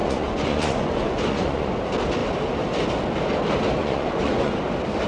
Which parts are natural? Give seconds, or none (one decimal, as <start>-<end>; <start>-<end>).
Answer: 1.7-3.8; 4.5-5.1